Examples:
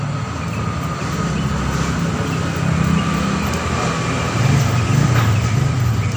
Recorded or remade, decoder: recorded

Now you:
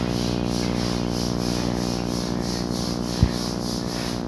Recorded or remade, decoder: recorded